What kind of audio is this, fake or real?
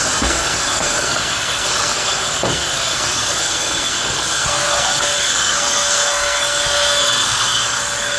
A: fake